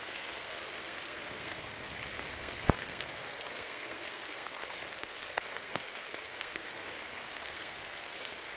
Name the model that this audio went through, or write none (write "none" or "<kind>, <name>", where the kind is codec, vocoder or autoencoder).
codec, SNAC